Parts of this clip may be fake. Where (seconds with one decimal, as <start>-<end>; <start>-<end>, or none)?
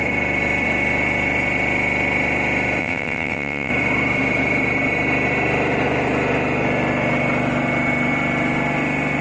2.8-3.7